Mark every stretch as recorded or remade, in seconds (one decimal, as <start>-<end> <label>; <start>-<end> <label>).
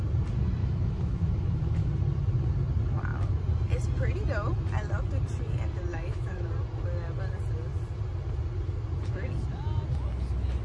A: 0.0-0.6 recorded; 0.6-1.9 remade; 1.9-5.9 recorded; 5.9-6.5 remade; 6.5-10.6 recorded